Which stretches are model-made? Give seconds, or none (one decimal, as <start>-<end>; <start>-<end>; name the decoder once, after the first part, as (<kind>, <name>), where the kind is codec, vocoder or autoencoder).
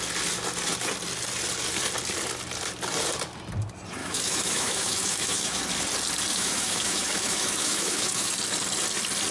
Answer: 4.0-5.6 (autoencoder, DAC-VAE); 6.3-8.3